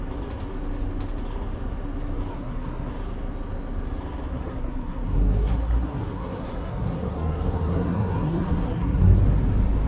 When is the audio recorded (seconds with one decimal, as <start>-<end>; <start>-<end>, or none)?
0.0-2.3; 2.9-4.3; 9.2-9.9